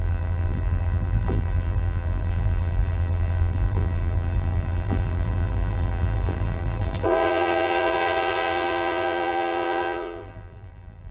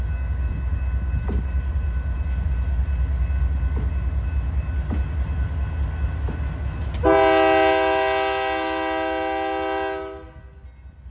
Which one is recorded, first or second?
second